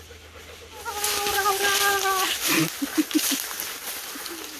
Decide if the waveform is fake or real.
real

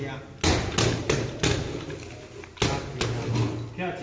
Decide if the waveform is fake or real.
real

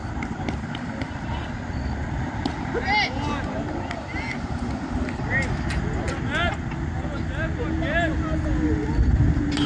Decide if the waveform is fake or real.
real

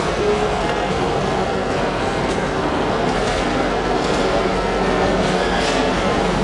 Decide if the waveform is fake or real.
fake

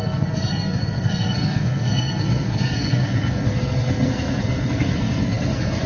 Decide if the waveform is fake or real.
fake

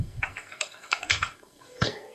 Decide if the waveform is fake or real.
fake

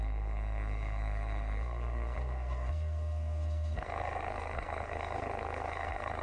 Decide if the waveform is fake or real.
fake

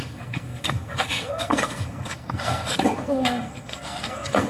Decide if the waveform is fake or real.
fake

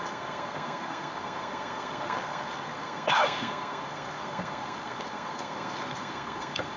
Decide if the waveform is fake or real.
fake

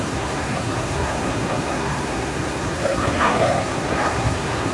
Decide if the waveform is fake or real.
fake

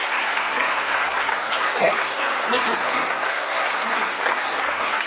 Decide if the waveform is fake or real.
fake